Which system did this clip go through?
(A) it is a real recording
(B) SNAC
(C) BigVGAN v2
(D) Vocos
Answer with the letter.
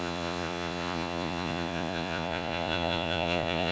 D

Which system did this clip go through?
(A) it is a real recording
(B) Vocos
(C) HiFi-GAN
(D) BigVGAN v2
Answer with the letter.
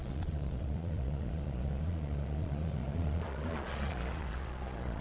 B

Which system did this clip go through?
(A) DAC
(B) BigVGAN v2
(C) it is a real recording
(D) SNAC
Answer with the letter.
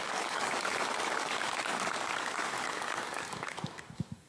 A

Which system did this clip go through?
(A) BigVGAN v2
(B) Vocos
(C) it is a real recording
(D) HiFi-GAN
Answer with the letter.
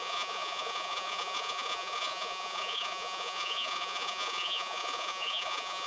B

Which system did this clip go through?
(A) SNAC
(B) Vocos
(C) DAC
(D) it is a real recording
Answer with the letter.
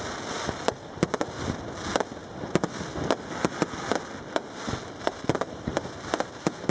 D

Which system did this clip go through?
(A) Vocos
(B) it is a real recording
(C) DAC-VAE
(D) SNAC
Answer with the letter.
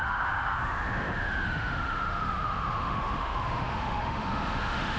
C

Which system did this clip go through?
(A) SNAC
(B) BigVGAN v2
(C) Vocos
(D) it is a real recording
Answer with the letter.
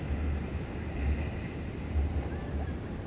D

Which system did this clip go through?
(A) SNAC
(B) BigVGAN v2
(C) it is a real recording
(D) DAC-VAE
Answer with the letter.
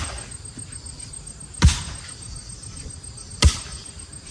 C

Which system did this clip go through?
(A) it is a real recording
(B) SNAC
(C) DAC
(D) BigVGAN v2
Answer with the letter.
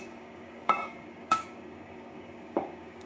C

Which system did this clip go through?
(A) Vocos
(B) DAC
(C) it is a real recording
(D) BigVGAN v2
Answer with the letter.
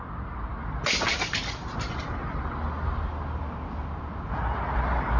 C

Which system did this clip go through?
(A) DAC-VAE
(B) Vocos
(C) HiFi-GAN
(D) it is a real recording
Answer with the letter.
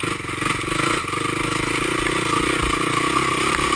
D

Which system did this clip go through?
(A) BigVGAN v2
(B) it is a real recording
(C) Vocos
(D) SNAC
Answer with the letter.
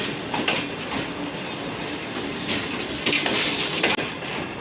B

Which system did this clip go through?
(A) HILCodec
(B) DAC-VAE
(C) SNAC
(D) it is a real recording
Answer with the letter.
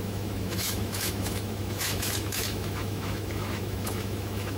B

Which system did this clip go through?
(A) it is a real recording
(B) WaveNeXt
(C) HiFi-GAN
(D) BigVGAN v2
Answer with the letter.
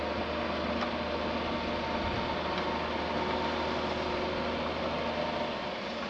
A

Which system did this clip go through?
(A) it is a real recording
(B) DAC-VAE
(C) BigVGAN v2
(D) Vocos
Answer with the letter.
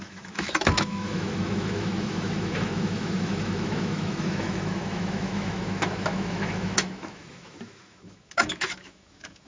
B